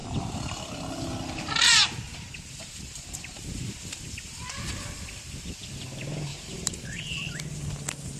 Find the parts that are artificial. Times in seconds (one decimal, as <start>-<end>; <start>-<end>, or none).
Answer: 0.0-0.7; 2.1-4.8; 6.3-7.3